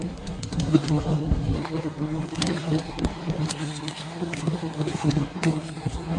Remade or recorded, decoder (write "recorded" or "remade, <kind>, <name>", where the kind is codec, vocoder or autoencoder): remade, codec, SNAC